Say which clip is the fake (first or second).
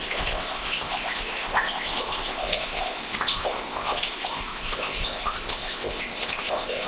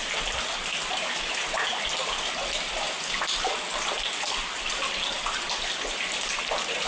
first